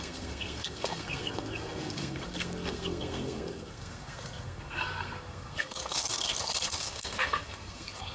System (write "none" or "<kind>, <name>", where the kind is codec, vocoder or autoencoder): codec, SNAC